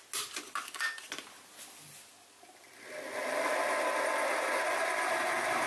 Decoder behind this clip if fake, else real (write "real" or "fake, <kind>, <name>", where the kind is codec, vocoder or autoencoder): real